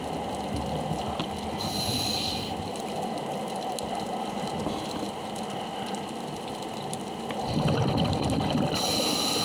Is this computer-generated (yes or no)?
no